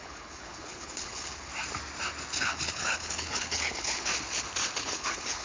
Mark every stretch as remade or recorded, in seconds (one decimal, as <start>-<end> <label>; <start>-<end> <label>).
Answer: 0.0-1.5 remade; 1.5-2.4 recorded; 2.4-4.1 remade; 4.1-4.8 recorded; 4.8-5.4 remade